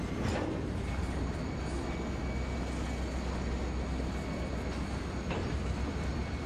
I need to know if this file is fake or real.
real